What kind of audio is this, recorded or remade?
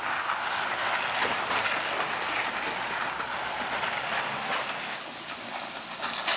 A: recorded